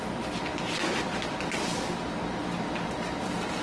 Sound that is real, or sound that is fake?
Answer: real